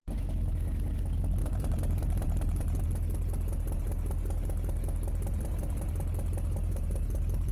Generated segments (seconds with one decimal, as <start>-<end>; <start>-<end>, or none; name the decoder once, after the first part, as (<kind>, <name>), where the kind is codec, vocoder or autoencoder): 1.4-2.8 (vocoder, BigVGAN v2); 6.6-7.5